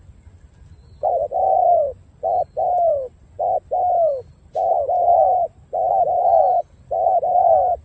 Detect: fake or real real